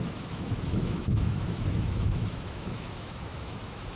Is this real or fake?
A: fake